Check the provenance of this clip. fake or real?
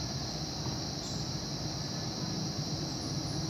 real